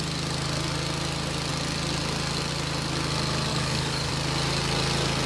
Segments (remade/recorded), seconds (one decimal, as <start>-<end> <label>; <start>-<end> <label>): 0.0-3.5 recorded; 3.5-4.1 remade; 4.1-5.3 recorded